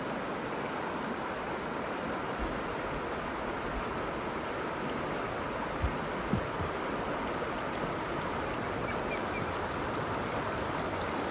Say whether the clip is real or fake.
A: real